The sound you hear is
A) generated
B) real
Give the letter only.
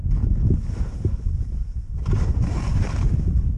B